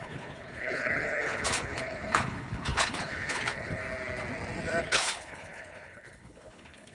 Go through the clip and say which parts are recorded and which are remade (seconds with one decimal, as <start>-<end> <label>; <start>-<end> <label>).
0.0-3.8 remade; 3.8-4.8 recorded; 4.8-6.9 remade

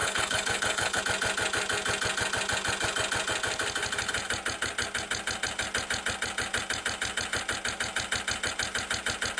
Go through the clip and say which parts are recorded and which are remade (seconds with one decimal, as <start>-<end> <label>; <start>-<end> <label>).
0.0-1.0 remade; 1.0-9.4 recorded

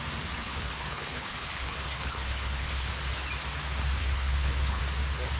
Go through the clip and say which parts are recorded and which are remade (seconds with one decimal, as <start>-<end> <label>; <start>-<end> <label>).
0.0-0.4 recorded; 0.4-2.9 remade; 2.9-4.0 recorded; 4.0-4.8 remade; 4.8-5.4 recorded

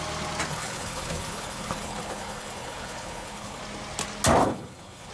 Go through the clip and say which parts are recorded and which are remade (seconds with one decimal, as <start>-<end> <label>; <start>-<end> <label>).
0.0-0.5 recorded; 0.5-3.6 remade; 3.6-4.4 recorded; 4.4-5.1 remade